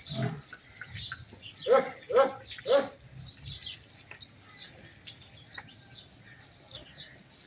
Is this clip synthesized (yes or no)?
no